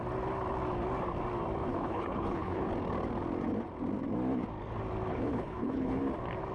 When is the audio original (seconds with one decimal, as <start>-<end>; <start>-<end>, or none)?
0.0-1.7; 2.7-5.1; 6.0-6.5